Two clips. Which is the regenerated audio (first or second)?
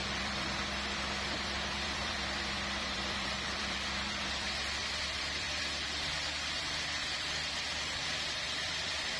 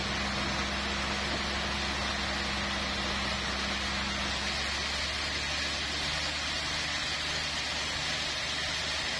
first